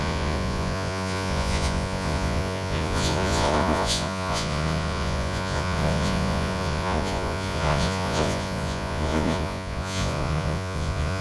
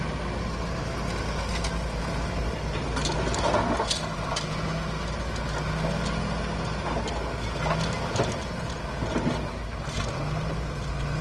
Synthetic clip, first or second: first